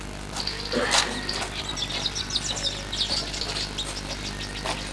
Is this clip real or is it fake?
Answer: real